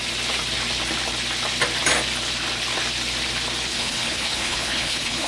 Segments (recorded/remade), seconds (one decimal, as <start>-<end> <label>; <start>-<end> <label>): 0.0-3.7 recorded; 3.7-5.3 remade